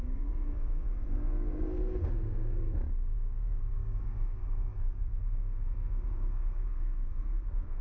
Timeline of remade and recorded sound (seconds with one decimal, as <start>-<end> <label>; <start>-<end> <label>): 0.0-2.8 remade; 2.8-3.3 recorded; 3.3-7.8 remade